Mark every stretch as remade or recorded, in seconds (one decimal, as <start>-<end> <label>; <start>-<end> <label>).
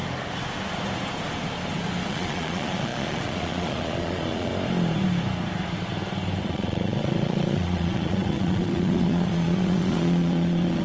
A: 0.0-2.1 recorded; 2.1-4.5 remade; 4.5-6.4 recorded; 6.4-10.8 remade